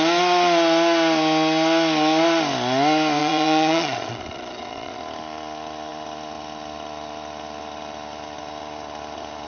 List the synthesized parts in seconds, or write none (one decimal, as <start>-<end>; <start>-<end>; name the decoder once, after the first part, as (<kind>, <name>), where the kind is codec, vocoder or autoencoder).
3.2-5.0 (vocoder, Vocos)